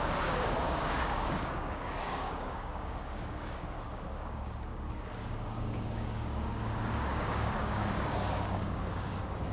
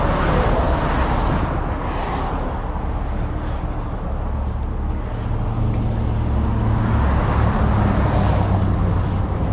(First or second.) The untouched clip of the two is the second